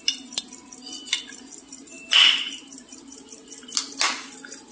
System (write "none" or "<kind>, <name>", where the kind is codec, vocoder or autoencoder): none